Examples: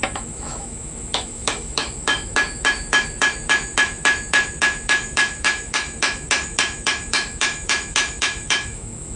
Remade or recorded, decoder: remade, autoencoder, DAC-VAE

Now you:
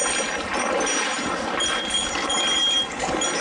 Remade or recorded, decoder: recorded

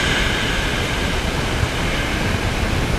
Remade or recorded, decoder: recorded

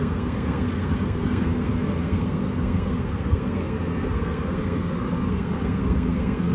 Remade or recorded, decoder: remade, codec, SNAC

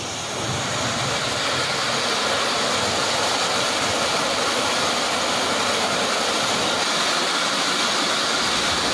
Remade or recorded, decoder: recorded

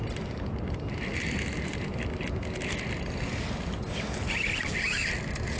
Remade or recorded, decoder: recorded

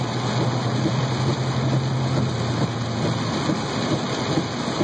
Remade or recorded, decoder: recorded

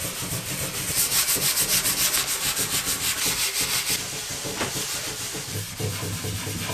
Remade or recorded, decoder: recorded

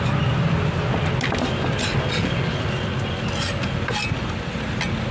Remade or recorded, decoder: recorded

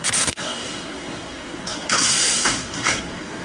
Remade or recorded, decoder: remade, codec, SNAC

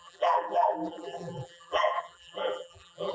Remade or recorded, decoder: remade, vocoder, BigVGAN v2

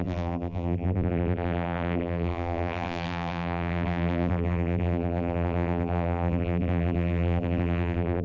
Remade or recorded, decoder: remade, vocoder, BigVGAN v2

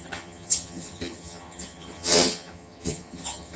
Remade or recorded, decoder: remade, vocoder, HiFi-GAN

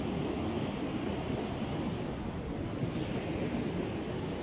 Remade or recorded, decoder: recorded